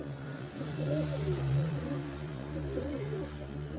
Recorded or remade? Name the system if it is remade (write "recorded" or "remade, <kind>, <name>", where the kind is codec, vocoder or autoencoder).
remade, vocoder, Vocos